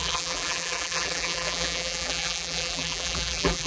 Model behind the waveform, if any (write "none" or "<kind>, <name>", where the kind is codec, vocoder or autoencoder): vocoder, BigVGAN v2